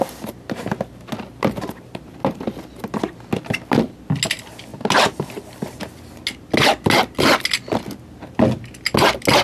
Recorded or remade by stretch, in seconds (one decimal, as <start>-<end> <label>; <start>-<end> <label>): 0.0-9.4 recorded